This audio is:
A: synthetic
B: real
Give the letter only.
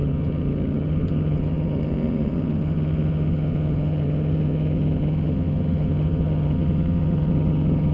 A